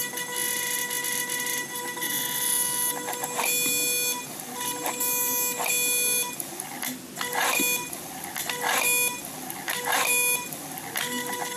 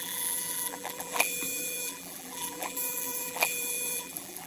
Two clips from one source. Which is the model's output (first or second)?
second